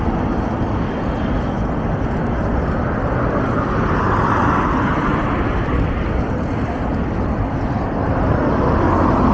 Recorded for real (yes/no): yes